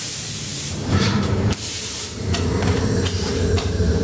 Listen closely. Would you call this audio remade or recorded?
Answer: remade